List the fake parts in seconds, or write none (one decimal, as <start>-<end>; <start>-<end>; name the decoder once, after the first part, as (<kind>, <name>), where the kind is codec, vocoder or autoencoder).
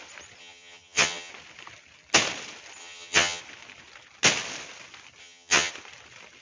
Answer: 0.4-1.3 (vocoder, HiFi-GAN); 2.8-3.4; 5.2-5.7